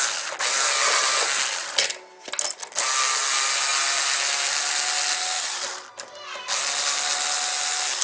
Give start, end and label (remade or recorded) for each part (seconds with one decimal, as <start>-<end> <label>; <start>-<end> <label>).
0.0-8.0 recorded